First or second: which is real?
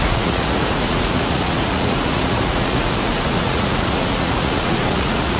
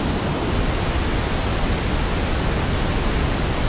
second